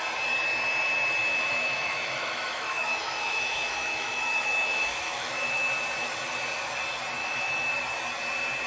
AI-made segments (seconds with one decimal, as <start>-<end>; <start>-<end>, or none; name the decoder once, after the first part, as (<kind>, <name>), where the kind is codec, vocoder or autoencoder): 1.2-5.7 (autoencoder, DAC-VAE); 7.2-7.7